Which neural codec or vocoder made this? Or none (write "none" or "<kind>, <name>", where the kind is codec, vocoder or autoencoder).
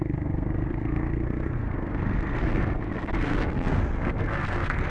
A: codec, SNAC